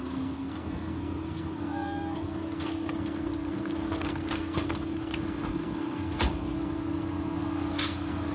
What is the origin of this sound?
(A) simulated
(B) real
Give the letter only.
A